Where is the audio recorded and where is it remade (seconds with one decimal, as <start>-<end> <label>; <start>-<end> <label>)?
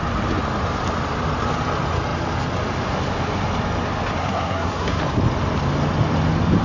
0.0-4.2 recorded; 4.2-5.0 remade; 5.0-6.6 recorded